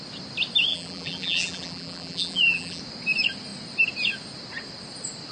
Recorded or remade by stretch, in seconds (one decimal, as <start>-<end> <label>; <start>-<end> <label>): 0.0-0.7 recorded; 0.7-2.8 remade; 2.8-5.3 recorded